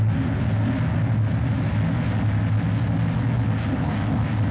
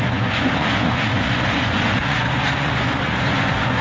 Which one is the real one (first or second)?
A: first